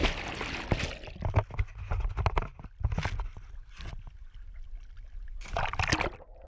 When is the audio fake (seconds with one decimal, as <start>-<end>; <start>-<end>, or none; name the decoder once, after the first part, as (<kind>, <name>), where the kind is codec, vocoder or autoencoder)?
none